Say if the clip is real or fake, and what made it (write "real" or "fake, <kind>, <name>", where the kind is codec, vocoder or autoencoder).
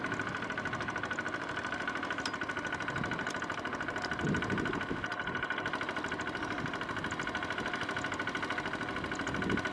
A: real